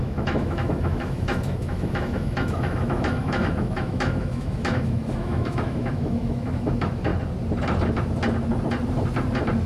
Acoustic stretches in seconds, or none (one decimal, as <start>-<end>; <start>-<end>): 7.1-9.7